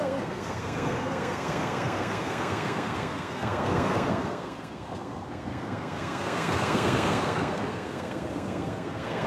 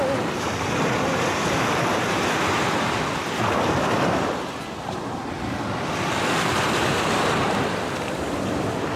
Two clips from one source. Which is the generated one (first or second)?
first